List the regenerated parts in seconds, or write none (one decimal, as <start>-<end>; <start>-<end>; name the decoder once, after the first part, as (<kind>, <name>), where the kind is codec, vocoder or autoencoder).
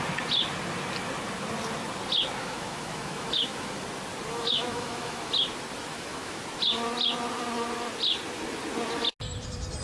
2.4-3.8 (autoencoder, DAC-VAE); 4.3-5.3; 5.9-6.4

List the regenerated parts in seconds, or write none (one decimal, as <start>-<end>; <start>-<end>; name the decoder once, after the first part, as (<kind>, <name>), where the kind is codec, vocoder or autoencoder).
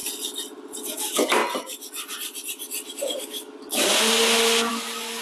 0.8-1.4 (codec, DAC); 3.0-3.9; 4.7-5.2